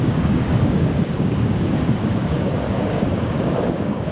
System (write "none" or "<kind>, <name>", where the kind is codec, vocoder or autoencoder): codec, DAC